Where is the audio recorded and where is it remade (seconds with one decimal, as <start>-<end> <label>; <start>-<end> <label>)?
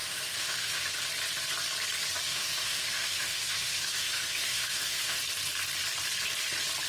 0.0-0.8 remade; 0.8-2.3 recorded; 2.3-5.2 remade; 5.2-6.9 recorded